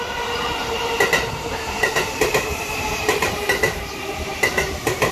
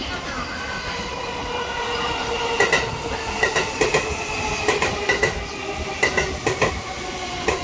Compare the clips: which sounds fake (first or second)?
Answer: first